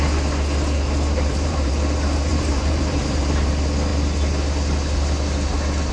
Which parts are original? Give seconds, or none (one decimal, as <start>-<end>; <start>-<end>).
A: 0.0-1.1; 1.7-2.3; 3.5-5.9